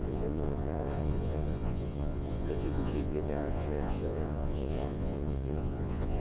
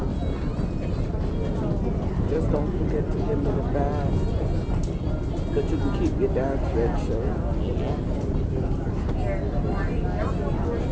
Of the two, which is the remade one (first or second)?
first